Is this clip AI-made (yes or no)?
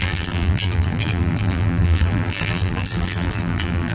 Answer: yes